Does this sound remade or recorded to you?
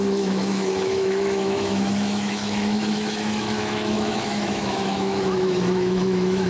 remade